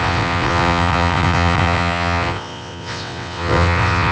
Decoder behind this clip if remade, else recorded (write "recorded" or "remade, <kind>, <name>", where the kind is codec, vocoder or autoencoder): remade, vocoder, WaveNeXt